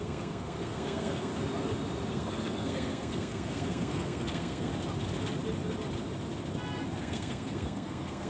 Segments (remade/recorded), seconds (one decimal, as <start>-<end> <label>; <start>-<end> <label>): 0.0-1.3 remade; 1.3-2.1 recorded; 2.1-4.7 remade; 4.7-7.0 recorded; 7.0-8.3 remade

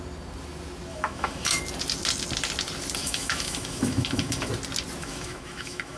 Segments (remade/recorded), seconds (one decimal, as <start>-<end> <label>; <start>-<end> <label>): 0.0-0.9 recorded; 0.9-1.6 remade; 1.6-3.0 recorded; 3.0-4.5 remade; 4.5-5.0 recorded; 5.0-6.0 remade

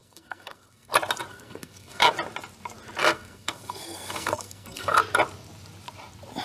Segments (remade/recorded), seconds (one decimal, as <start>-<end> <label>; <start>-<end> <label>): 0.0-0.9 remade; 0.9-1.3 recorded; 1.3-2.1 remade; 2.1-3.0 recorded; 3.0-5.0 remade; 5.0-6.4 recorded